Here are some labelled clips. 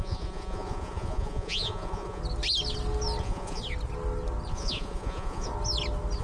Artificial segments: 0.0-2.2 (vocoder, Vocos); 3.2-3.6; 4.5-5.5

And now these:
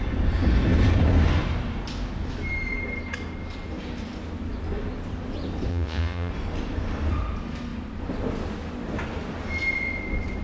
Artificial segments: 5.7-6.3 (vocoder, Vocos)